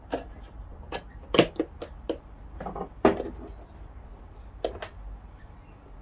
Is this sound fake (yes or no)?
no